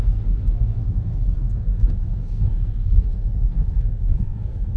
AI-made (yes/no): yes